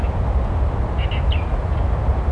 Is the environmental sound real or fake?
real